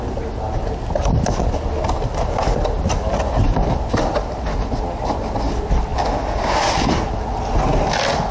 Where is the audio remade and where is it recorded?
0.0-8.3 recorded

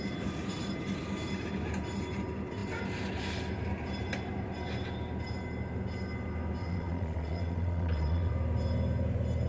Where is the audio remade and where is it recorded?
0.0-6.6 recorded; 6.6-8.3 remade; 8.3-9.5 recorded

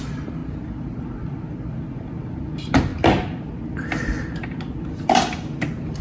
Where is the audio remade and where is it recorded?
0.0-6.0 recorded

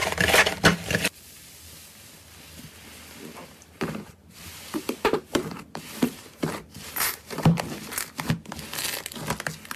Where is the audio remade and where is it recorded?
0.0-3.4 recorded; 3.4-8.5 remade; 8.5-9.8 recorded

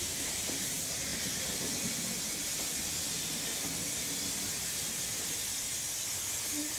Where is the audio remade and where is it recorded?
0.0-1.1 remade; 1.1-4.5 recorded; 4.5-5.7 remade; 5.7-6.8 recorded

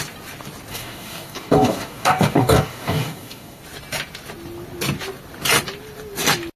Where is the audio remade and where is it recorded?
0.0-0.7 recorded; 0.7-3.6 remade; 3.6-6.6 recorded